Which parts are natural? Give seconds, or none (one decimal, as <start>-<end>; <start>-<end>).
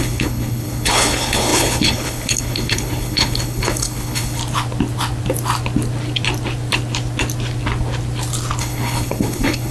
4.4-8.6